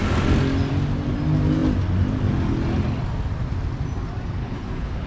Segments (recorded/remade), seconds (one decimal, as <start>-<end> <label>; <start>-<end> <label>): 0.0-4.4 recorded; 4.4-5.1 remade